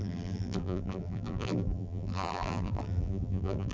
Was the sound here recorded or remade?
remade